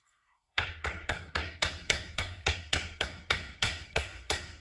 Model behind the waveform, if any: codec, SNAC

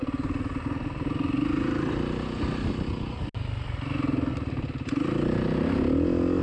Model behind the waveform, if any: none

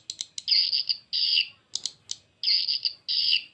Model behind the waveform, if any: none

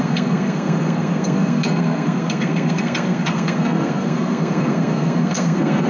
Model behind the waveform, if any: codec, SNAC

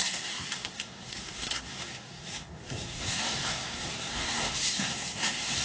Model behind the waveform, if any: codec, SNAC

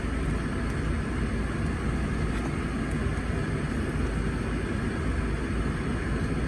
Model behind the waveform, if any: none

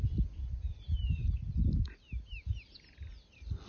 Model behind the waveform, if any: none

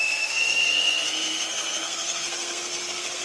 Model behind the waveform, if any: codec, SNAC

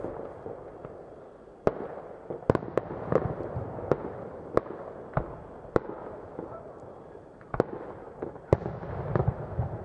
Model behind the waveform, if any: none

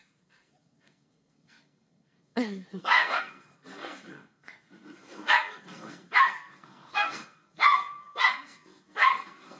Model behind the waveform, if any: codec, SNAC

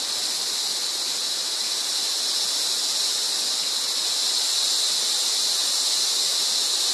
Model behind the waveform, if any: none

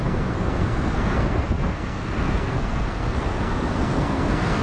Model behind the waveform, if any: codec, SNAC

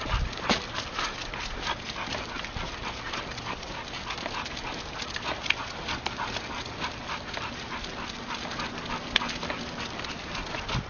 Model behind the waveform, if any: none